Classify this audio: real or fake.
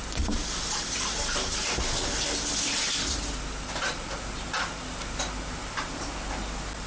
real